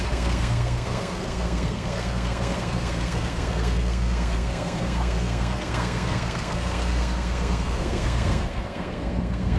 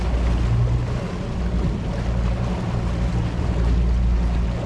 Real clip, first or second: second